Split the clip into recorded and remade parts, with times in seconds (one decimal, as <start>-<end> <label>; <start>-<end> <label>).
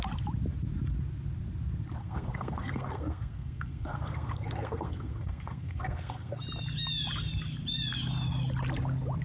0.0-2.0 recorded; 2.0-6.4 remade; 6.4-9.2 recorded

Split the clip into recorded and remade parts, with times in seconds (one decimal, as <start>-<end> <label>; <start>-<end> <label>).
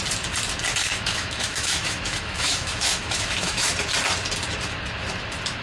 0.0-0.8 recorded; 0.8-3.7 remade; 3.7-5.6 recorded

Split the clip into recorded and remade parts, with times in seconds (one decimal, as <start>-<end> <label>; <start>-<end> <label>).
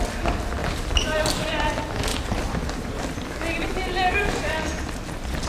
0.0-0.6 recorded; 0.6-1.2 remade; 1.2-2.1 recorded; 2.1-3.0 remade; 3.0-5.5 recorded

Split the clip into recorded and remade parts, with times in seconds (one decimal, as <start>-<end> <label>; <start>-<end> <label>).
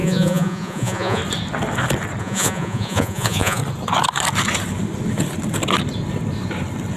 0.0-1.2 remade; 1.2-2.2 recorded; 2.2-3.6 remade; 3.6-7.0 recorded